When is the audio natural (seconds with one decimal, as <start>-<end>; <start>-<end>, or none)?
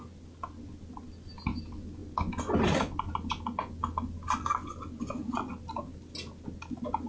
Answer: 0.0-7.1